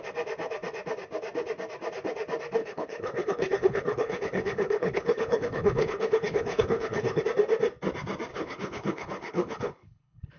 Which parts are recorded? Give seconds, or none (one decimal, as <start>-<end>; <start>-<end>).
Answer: 0.0-2.6; 7.2-8.3